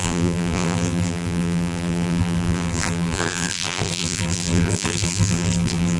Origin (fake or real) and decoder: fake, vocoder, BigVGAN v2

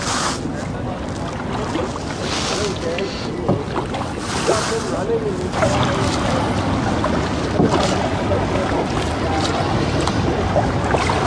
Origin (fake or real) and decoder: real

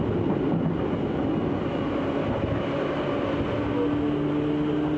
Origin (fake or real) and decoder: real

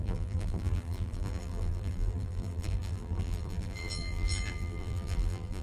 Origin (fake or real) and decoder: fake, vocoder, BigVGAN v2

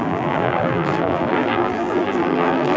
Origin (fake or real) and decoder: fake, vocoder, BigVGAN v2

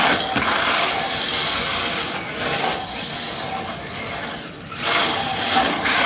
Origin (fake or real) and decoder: real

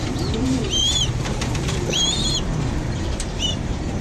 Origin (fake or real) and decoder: fake, vocoder, BigVGAN v2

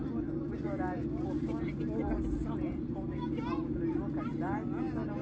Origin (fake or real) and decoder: real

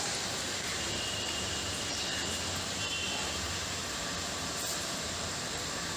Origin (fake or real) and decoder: fake, vocoder, BigVGAN v2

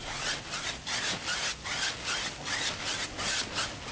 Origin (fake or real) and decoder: real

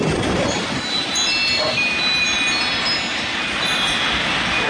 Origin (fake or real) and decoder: real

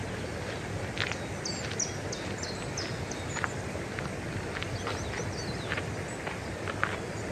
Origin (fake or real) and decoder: real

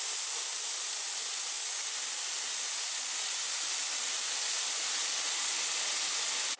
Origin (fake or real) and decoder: real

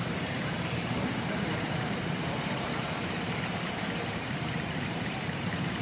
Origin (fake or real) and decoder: fake, vocoder, BigVGAN v2